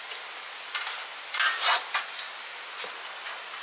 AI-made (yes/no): no